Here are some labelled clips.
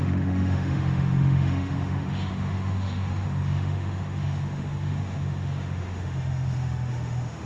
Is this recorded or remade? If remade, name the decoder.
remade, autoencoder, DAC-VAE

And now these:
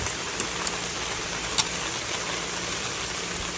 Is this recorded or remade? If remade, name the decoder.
recorded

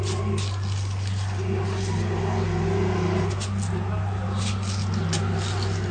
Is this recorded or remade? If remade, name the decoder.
recorded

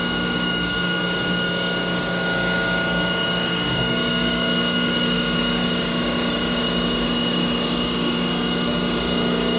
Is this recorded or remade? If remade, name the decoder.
remade, codec, DAC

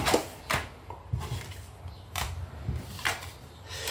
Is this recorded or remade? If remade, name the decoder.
recorded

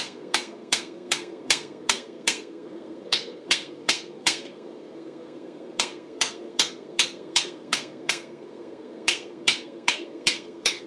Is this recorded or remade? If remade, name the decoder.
remade, codec, SNAC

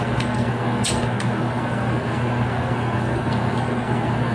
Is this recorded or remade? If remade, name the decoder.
remade, codec, SNAC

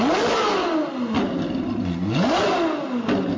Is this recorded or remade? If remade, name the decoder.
recorded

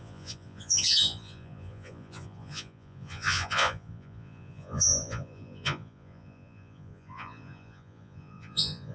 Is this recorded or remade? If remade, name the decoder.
remade, vocoder, Vocos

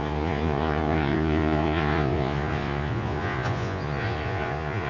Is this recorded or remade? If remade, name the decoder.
remade, vocoder, Vocos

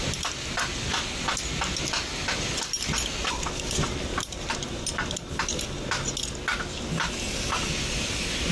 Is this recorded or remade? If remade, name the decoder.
recorded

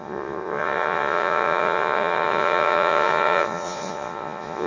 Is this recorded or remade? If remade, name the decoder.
remade, vocoder, Vocos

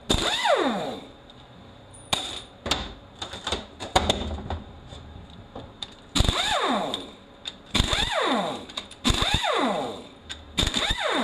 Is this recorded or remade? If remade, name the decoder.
remade, vocoder, BigVGAN v2